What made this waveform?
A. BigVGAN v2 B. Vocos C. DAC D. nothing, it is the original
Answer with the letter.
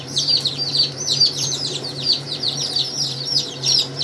A